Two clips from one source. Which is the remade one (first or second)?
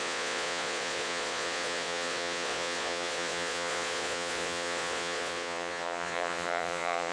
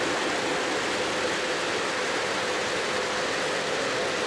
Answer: first